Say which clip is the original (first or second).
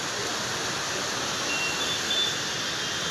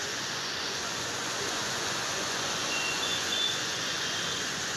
first